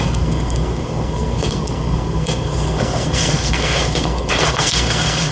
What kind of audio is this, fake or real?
fake